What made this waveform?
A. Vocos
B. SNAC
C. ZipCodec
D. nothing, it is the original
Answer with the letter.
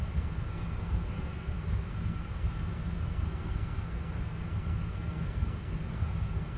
B